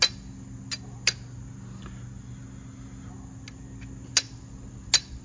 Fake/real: real